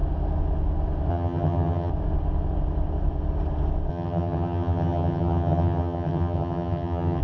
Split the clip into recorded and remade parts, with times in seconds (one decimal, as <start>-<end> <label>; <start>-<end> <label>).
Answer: 0.0-1.1 recorded; 1.1-1.9 remade; 1.9-3.9 recorded; 3.9-7.2 remade